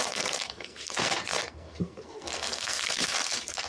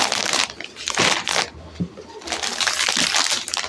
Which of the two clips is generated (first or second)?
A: first